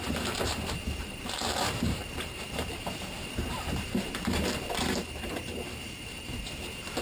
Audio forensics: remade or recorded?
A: remade